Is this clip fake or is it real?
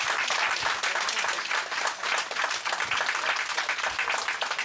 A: real